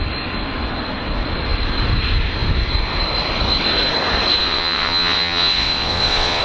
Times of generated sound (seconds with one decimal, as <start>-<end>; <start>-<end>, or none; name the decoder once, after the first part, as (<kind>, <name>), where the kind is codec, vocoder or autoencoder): 4.4-6.4 (vocoder, WaveNeXt)